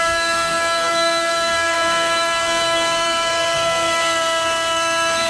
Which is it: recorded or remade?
remade